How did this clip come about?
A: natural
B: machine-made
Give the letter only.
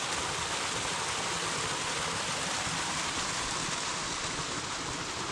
A